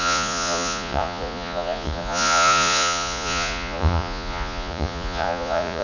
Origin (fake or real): fake